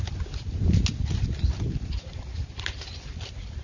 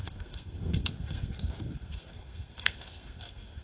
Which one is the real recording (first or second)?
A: first